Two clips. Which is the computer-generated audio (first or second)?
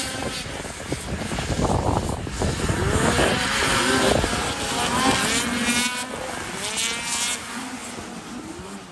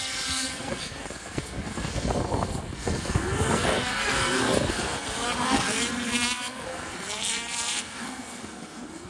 second